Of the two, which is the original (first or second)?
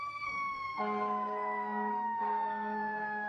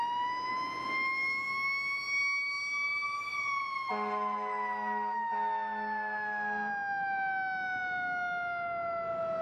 second